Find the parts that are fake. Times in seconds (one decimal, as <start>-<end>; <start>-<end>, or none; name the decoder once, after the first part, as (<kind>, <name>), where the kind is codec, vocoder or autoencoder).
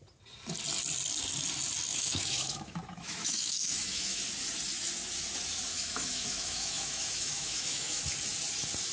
1.9-4.2 (autoencoder, DAC-VAE); 5.7-8.0